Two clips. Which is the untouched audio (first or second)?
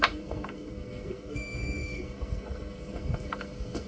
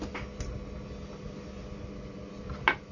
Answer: second